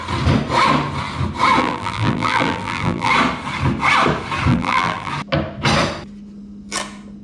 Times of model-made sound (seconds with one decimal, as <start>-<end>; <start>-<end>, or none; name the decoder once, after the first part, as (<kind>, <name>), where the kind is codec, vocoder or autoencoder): 1.6-3.1 (vocoder, BigVGAN v2); 4.5-5.1